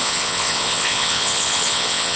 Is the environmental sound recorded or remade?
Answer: remade